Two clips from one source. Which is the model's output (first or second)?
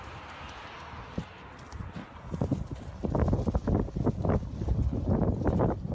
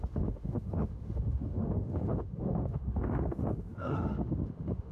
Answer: second